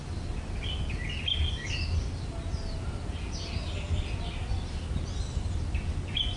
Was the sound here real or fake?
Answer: real